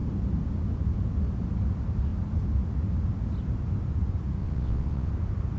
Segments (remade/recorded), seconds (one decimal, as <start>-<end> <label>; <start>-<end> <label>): 0.0-4.4 recorded; 4.4-5.1 remade; 5.1-5.6 recorded